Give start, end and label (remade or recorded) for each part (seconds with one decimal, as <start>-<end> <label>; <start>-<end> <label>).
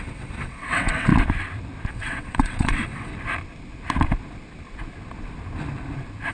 0.0-1.1 remade; 1.1-1.9 recorded; 1.9-3.1 remade; 3.1-6.3 recorded